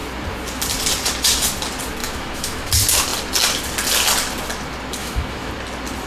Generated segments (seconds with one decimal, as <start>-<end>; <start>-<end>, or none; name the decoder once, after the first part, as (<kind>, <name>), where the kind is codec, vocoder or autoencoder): 2.0-2.7 (autoencoder, DAC-VAE); 5.0-5.5